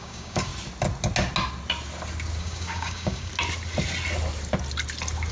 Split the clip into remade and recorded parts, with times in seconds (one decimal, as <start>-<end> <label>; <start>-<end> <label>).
0.0-0.5 remade; 0.5-2.4 recorded; 2.4-3.3 remade; 3.3-5.3 recorded